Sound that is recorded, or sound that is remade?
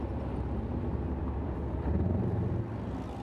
remade